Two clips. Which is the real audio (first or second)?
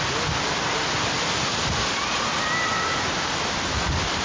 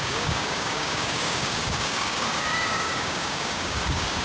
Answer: first